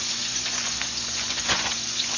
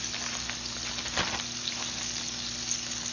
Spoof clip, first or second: first